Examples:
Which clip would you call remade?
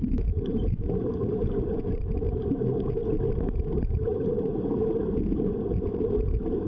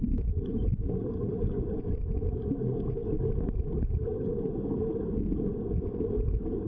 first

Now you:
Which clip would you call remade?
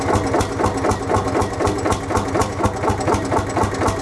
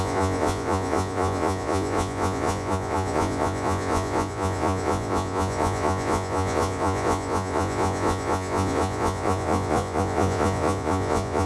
second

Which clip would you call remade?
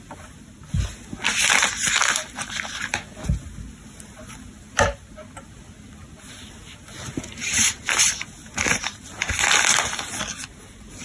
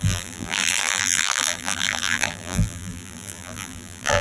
second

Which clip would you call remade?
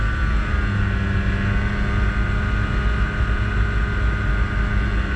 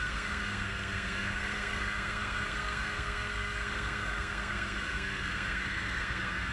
second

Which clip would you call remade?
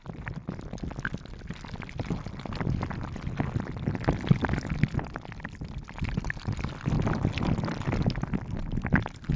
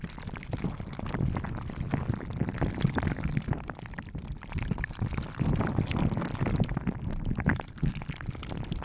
second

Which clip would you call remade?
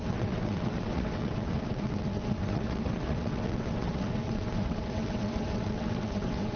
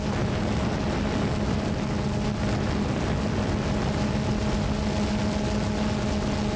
first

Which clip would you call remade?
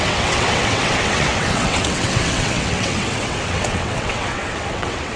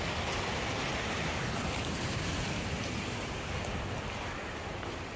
first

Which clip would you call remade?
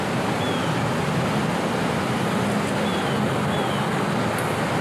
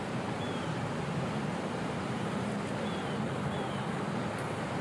second